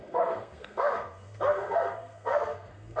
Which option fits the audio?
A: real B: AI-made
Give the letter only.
B